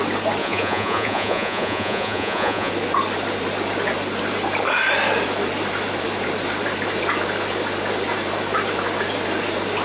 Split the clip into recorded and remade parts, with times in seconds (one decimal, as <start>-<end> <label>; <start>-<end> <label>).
0.0-0.4 recorded; 0.4-2.7 remade; 2.7-9.8 recorded